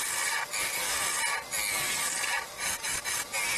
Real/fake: real